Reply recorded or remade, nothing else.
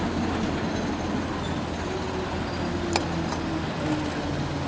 recorded